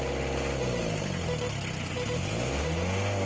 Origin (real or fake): real